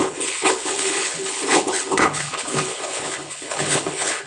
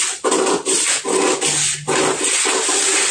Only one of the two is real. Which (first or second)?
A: second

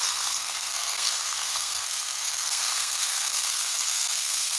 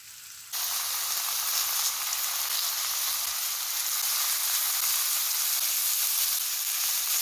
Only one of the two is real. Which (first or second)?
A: second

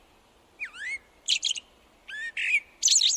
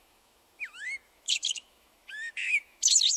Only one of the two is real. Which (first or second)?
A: first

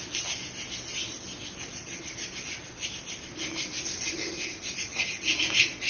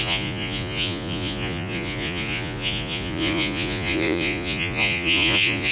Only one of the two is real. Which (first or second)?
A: first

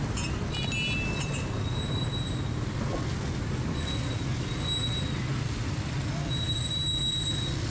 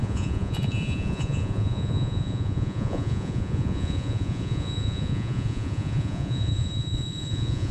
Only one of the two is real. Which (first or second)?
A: first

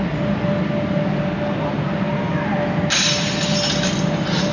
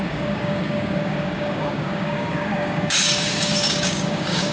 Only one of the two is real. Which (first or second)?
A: first